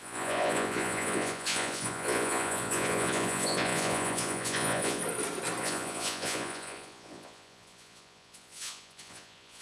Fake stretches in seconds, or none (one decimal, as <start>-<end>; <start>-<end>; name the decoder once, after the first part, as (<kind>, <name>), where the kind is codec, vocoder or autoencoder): 0.0-5.0 (vocoder, Vocos); 5.6-9.6